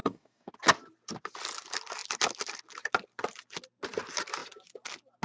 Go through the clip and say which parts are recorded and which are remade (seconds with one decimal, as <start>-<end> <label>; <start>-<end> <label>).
0.0-0.5 remade; 0.5-5.2 recorded